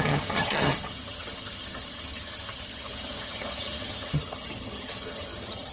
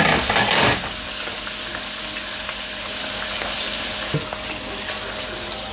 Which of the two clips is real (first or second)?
second